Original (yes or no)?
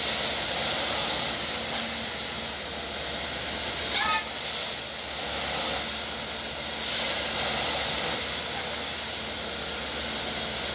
yes